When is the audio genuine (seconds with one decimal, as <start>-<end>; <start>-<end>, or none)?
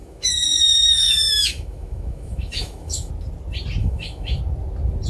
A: 3.1-3.8; 4.4-5.1